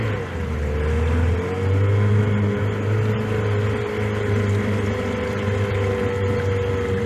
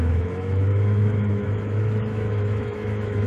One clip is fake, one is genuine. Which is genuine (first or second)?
first